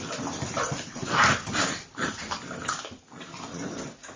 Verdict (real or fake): real